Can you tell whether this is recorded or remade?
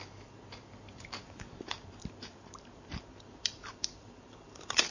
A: remade